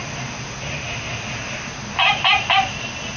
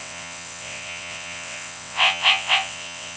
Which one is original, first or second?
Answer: first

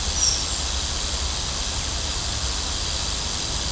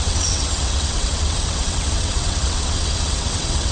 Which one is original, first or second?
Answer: first